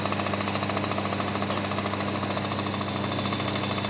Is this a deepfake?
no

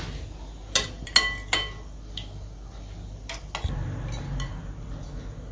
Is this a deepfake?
no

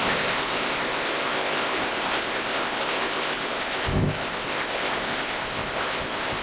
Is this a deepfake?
yes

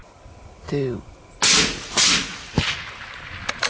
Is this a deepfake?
no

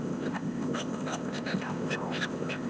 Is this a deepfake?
yes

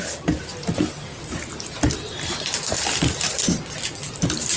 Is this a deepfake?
no